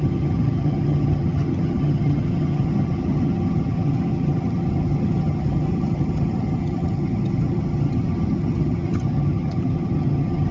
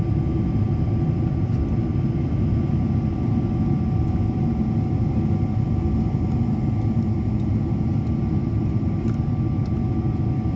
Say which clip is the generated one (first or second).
first